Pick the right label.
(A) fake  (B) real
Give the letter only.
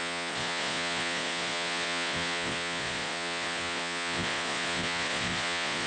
A